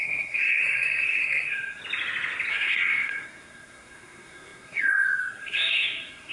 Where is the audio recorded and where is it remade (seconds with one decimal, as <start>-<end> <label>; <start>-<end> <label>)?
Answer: 0.0-1.8 remade; 1.8-2.5 recorded; 2.5-6.3 remade